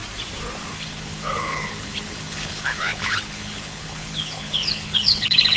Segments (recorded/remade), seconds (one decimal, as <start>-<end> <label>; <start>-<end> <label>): 0.0-0.7 recorded; 0.7-5.6 remade

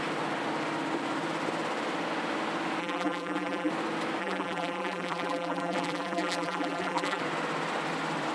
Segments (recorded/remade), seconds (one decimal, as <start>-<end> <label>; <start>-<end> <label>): 0.0-2.8 recorded; 2.8-3.7 remade; 3.7-4.2 recorded; 4.2-7.2 remade; 7.2-8.3 recorded

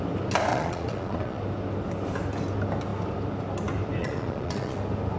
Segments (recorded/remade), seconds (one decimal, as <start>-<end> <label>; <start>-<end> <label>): 0.0-0.5 recorded; 0.5-1.4 remade; 1.4-4.0 recorded; 4.0-4.8 remade; 4.8-5.2 recorded

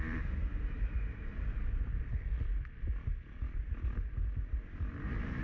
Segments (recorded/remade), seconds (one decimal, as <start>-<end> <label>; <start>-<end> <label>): 0.0-1.3 remade; 1.3-4.5 recorded; 4.5-5.4 remade

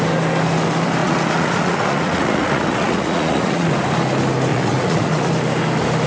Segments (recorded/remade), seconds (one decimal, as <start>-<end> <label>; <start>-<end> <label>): 0.0-1.0 recorded; 1.0-3.7 remade; 3.7-4.5 recorded; 4.5-5.3 remade; 5.3-6.1 recorded